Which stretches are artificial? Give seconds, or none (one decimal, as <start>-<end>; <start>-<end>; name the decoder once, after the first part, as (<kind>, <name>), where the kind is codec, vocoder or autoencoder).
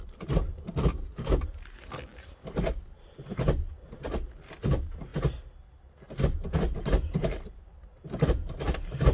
none